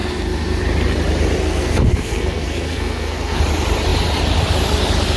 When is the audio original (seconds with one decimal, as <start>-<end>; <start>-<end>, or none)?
0.6-1.4; 3.4-5.2